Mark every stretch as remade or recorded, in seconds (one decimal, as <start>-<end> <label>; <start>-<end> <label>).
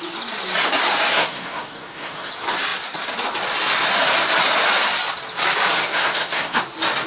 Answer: 0.0-1.1 recorded; 1.1-2.3 remade; 2.3-5.7 recorded; 5.7-6.6 remade; 6.6-7.1 recorded